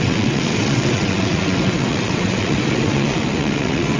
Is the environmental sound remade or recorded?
remade